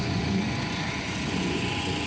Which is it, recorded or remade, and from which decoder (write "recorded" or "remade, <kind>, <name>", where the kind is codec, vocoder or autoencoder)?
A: remade, vocoder, Vocos